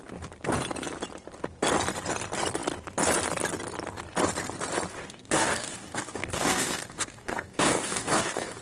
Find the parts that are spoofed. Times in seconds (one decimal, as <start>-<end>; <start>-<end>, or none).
4.9-8.6